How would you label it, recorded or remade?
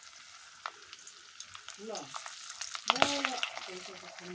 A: recorded